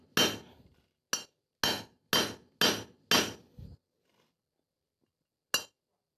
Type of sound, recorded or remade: recorded